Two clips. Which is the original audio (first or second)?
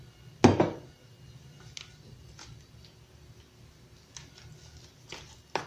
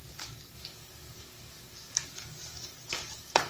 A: first